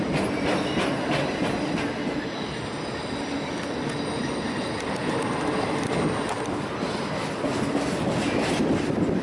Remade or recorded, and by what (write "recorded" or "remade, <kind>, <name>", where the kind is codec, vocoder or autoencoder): recorded